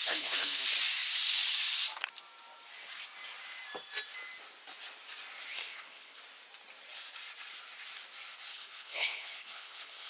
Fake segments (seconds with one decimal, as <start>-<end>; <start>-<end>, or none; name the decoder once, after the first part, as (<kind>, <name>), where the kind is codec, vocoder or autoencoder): 0.0-0.6 (codec, HILCodec); 5.6-6.2; 8.5-10.1